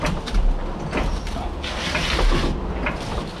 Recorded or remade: recorded